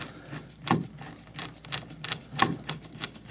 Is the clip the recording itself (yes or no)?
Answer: yes